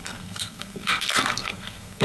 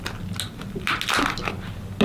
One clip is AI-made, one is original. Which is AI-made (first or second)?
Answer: first